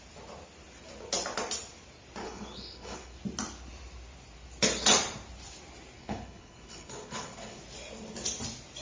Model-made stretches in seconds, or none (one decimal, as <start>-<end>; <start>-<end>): 2.2-3.2; 6.0-7.6